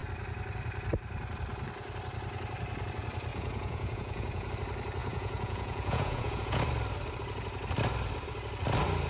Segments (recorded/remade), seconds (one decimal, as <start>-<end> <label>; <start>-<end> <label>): 0.0-3.3 recorded; 3.3-4.5 remade; 4.5-5.0 recorded; 5.0-6.6 remade; 6.6-9.1 recorded